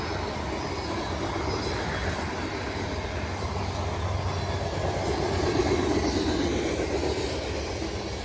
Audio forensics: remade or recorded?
recorded